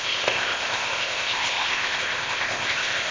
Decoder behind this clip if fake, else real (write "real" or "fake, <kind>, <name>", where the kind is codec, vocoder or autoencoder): fake, codec, ZipCodec